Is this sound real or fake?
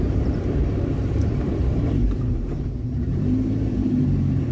fake